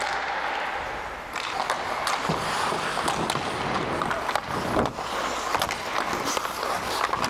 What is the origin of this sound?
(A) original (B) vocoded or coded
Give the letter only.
A